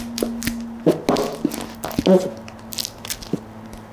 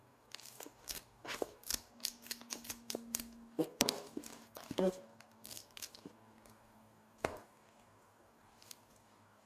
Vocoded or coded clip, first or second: second